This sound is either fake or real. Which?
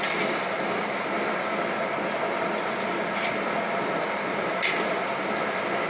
real